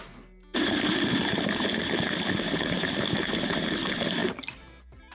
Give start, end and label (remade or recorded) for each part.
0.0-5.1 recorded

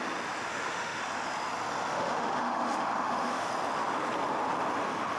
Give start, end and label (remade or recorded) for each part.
0.0-0.5 recorded; 0.5-1.0 remade; 1.0-1.9 recorded; 1.9-3.5 remade; 3.5-5.2 recorded

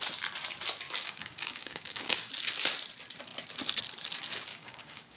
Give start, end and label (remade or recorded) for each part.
0.0-1.0 recorded; 1.0-2.3 remade; 2.3-4.5 recorded; 4.5-5.2 remade

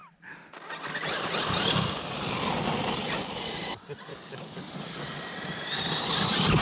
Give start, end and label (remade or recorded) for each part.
0.0-4.1 recorded; 4.1-4.7 remade; 4.7-6.6 recorded